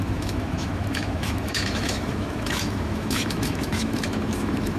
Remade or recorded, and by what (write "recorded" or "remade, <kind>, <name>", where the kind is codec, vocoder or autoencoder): remade, autoencoder, DAC-VAE